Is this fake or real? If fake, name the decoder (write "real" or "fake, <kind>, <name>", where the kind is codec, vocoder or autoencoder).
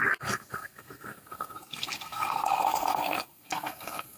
fake, codec, SNAC